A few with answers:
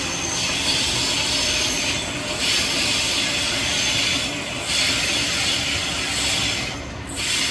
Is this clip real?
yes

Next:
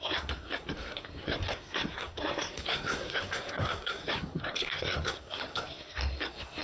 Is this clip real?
no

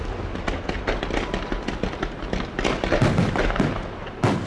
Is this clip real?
yes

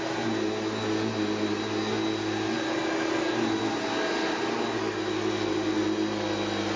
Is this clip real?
yes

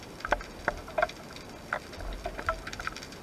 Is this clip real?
yes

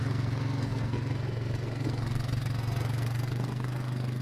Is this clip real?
no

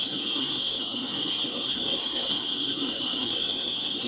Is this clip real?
no